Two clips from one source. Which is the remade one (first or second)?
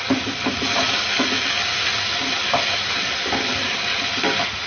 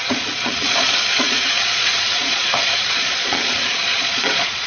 second